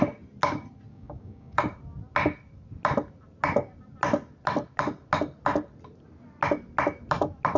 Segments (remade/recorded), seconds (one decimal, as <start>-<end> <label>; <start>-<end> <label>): 0.0-0.9 recorded; 0.9-1.6 remade; 1.6-7.6 recorded